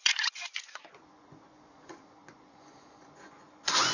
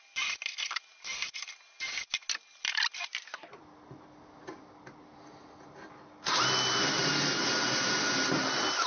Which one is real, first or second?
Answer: second